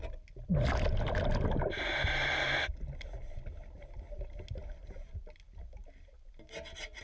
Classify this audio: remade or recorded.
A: recorded